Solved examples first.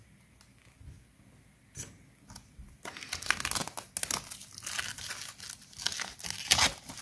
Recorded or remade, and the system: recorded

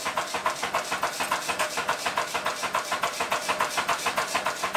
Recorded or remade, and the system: recorded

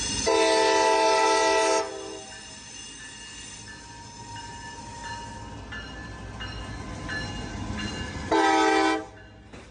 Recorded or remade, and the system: recorded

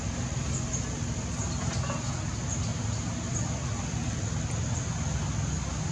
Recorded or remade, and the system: recorded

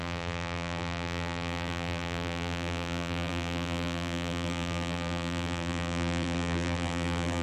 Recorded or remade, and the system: remade, vocoder, BigVGAN v2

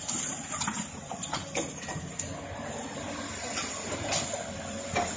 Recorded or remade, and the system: remade, vocoder, BigVGAN v2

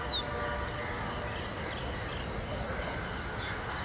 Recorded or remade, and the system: recorded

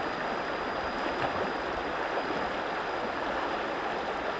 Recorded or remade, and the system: recorded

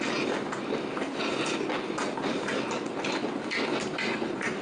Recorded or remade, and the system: recorded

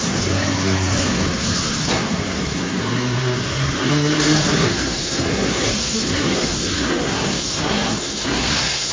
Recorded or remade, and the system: remade, codec, SNAC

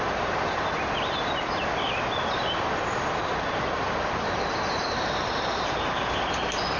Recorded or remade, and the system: recorded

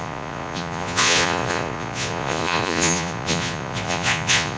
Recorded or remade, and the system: remade, vocoder, Vocos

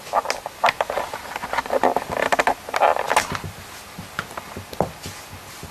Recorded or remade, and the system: recorded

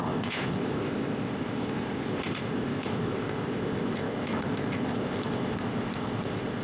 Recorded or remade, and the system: remade, codec, ZipCodec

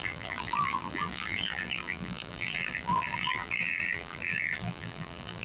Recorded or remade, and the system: remade, vocoder, BigVGAN v2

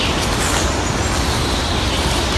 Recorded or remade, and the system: recorded